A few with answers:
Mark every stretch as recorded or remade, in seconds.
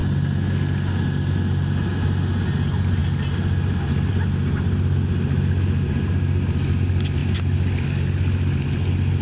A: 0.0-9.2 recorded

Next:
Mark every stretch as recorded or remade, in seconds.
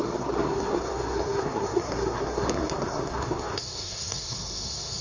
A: 0.0-5.0 remade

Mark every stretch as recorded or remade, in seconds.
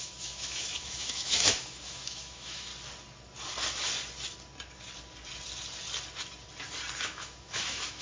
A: 0.0-2.7 remade; 2.7-7.0 recorded; 7.0-8.0 remade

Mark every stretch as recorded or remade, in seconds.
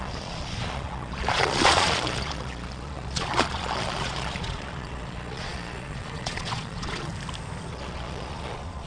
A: 0.0-7.1 remade; 7.1-7.7 recorded; 7.7-8.9 remade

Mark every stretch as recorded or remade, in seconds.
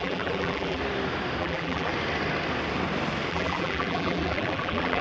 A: 0.0-0.8 remade; 0.8-1.4 recorded; 1.4-1.9 remade; 1.9-3.3 recorded; 3.3-5.0 remade